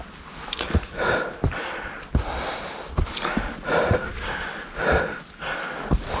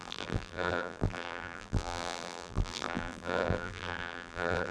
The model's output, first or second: second